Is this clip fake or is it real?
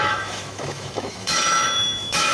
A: fake